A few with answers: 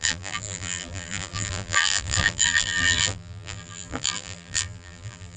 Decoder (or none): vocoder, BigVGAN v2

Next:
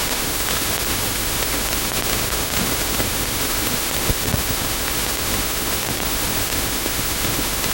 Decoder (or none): autoencoder, DAC-VAE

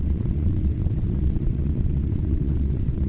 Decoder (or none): vocoder, WaveNeXt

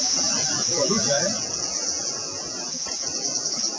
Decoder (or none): vocoder, Vocos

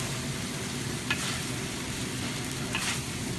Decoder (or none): none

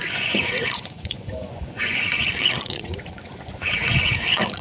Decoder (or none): vocoder, Vocos